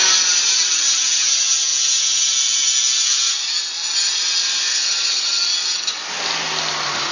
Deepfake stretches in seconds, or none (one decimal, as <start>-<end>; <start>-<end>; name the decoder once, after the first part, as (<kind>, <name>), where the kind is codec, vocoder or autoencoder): 4.7-5.4 (vocoder, HiFi-GAN)

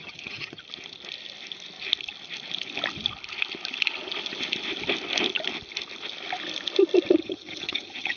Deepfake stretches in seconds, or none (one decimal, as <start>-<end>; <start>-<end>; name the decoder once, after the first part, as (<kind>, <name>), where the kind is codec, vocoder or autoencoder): 0.0-0.6 (vocoder, HiFi-GAN); 7.2-8.2

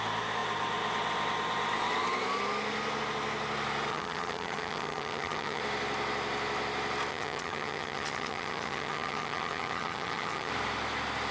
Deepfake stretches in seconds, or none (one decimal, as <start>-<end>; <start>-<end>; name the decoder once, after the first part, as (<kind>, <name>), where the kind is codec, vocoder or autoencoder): 3.9-5.6 (vocoder, HiFi-GAN); 7.1-10.5

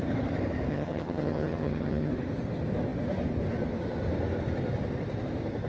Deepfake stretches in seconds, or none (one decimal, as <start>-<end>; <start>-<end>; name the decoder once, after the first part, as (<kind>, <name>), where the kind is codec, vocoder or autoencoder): 0.7-2.1 (vocoder, HiFi-GAN)

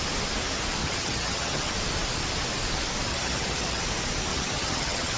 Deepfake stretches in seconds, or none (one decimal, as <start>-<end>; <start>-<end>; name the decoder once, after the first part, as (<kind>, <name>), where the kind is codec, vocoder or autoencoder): 0.8-1.7 (vocoder, HiFi-GAN); 3.1-3.8; 4.3-5.2

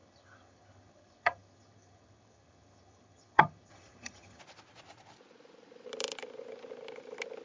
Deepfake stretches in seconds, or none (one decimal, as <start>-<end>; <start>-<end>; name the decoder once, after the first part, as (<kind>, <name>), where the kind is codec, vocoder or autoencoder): 0.0-4.4 (vocoder, HiFi-GAN)

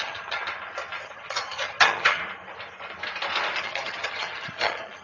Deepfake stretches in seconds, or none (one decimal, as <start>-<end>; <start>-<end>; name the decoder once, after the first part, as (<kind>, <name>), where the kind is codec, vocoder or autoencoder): 0.0-0.4 (vocoder, HiFi-GAN); 1.0-2.2; 3.6-5.0

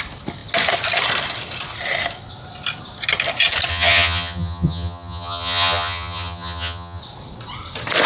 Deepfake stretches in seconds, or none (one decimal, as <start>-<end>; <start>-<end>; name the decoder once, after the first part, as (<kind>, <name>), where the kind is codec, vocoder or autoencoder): 3.7-7.0 (vocoder, HiFi-GAN)